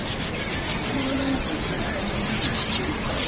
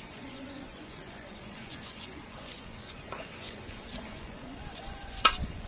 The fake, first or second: second